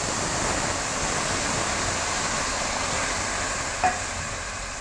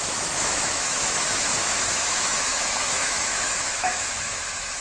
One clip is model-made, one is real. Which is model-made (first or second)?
second